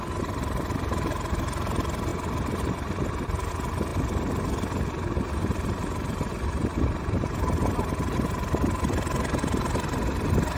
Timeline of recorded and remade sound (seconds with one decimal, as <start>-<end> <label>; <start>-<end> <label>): 0.0-10.6 recorded